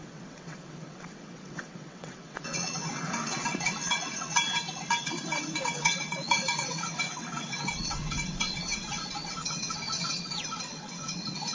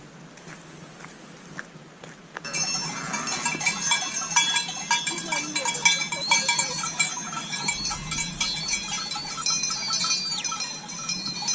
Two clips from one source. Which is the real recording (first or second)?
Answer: second